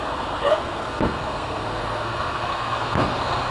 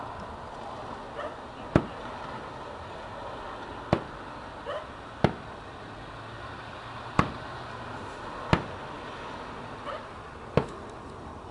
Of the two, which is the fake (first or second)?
first